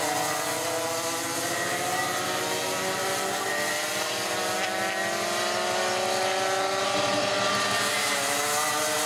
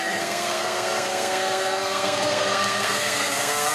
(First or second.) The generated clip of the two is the second